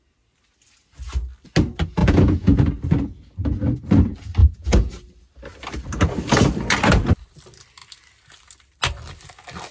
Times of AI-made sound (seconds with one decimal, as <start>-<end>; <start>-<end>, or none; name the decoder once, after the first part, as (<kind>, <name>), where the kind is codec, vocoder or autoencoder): 2.0-2.6 (vocoder, Vocos); 4.4-4.9